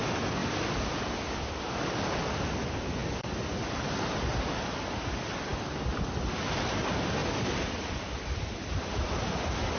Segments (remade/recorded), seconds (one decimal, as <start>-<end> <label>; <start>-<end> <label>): 0.0-0.4 recorded; 0.4-1.6 remade; 1.6-3.0 recorded; 3.0-3.7 remade; 3.7-9.8 recorded